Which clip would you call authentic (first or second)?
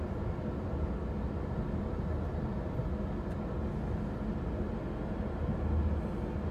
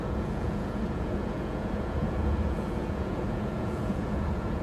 first